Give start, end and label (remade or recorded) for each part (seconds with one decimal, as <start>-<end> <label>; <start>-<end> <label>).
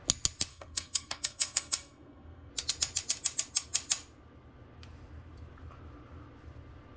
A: 0.0-0.5 recorded; 0.5-2.5 remade; 2.5-7.0 recorded